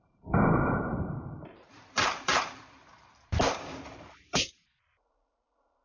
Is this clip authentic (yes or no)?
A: no